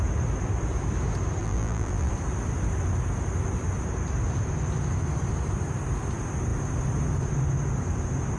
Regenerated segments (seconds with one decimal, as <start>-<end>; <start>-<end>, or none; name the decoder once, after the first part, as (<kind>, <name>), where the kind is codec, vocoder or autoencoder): 1.4-2.1 (vocoder, BigVGAN v2)